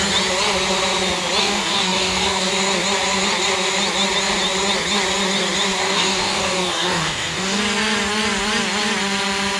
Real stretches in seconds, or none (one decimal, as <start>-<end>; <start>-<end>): 0.0-1.4; 2.5-5.8; 7.6-9.6